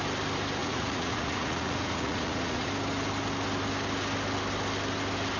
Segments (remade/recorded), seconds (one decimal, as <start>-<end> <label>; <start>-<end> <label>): 0.0-0.6 recorded; 0.6-2.7 remade; 2.7-5.4 recorded